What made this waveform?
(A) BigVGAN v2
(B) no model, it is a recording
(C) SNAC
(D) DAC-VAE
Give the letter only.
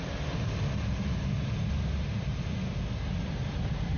B